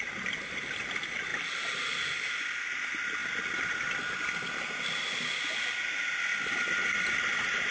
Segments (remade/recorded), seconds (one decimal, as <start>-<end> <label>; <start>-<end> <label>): 0.0-1.3 recorded; 1.3-2.0 remade; 2.0-3.2 recorded; 3.2-3.8 remade; 3.8-6.3 recorded; 6.3-7.7 remade